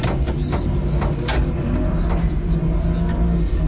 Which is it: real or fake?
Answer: real